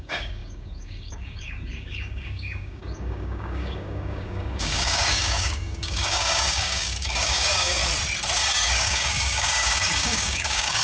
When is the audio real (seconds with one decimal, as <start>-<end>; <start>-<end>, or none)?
7.8-8.5